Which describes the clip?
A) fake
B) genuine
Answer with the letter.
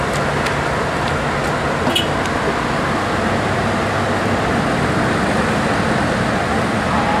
B